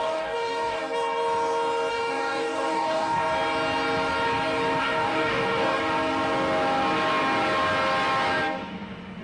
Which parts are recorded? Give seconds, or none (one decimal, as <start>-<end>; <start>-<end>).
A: 0.8-1.9; 3.2-4.8; 5.8-9.2